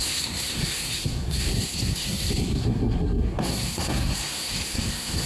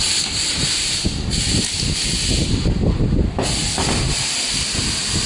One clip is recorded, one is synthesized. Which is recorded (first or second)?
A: second